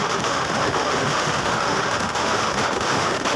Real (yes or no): no